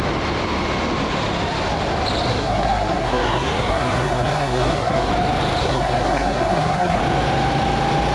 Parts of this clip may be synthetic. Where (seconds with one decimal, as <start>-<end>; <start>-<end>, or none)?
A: 2.3-5.1; 5.6-7.0